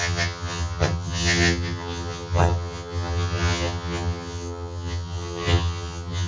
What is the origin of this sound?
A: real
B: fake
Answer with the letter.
B